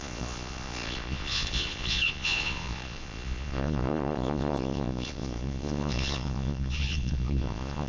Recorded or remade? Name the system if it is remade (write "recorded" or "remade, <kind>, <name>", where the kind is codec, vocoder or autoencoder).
remade, vocoder, Vocos